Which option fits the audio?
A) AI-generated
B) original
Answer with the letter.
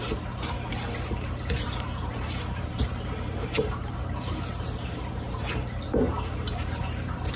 A